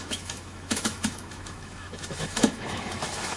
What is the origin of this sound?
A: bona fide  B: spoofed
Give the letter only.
B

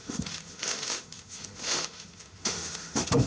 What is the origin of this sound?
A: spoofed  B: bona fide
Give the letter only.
A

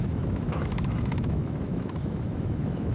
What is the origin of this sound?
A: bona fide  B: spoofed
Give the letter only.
B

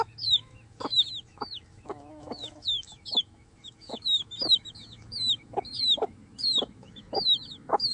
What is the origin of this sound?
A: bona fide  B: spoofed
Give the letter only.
B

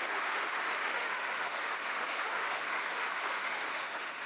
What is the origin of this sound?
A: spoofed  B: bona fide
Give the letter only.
A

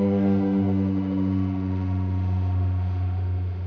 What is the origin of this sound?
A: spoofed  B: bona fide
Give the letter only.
A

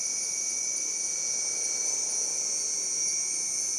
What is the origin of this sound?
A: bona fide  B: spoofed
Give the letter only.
A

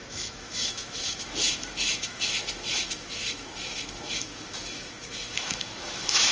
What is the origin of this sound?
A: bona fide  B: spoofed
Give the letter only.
B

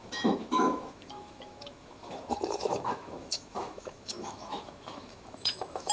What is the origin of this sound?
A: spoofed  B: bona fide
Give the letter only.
A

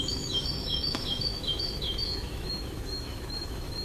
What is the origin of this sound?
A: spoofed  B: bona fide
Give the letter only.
A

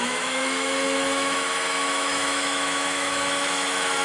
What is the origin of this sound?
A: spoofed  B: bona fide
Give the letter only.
A